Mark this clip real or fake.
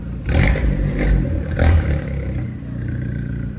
fake